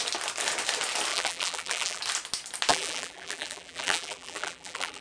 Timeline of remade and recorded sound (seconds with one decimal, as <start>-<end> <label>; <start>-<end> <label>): 0.0-1.1 recorded; 1.1-2.0 remade; 2.0-2.7 recorded; 2.7-5.0 remade